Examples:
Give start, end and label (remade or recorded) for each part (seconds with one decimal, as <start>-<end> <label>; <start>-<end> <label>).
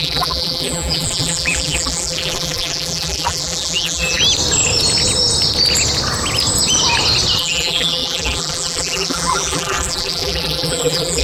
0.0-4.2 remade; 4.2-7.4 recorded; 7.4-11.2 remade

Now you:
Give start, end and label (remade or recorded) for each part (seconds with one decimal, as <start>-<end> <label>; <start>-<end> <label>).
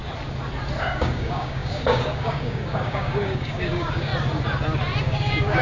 0.0-0.8 recorded; 0.8-4.1 remade; 4.1-5.0 recorded; 5.0-5.6 remade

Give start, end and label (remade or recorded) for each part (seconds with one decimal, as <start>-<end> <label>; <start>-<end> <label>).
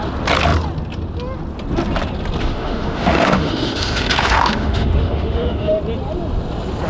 0.0-2.4 recorded; 2.4-5.8 remade; 5.8-6.9 recorded